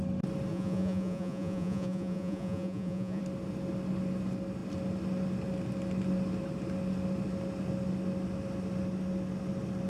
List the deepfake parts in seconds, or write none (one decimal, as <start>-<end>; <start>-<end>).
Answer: 0.5-3.2